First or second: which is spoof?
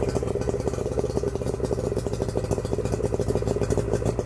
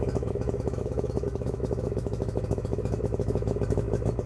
second